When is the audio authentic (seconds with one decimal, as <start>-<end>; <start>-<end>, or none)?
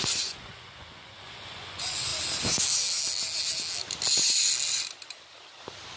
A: 2.1-6.0